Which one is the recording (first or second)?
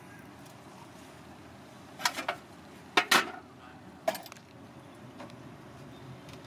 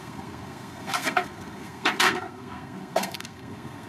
first